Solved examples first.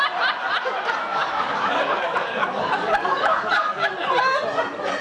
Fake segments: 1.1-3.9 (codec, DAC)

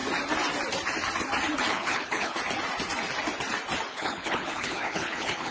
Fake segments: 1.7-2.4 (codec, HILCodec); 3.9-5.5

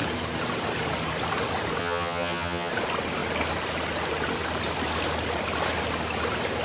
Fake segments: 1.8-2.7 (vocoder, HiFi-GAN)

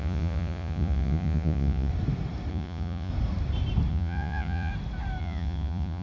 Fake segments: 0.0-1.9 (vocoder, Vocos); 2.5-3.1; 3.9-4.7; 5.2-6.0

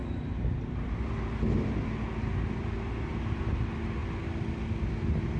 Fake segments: none